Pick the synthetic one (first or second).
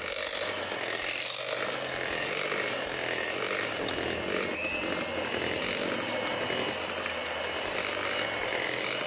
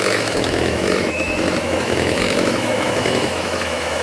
second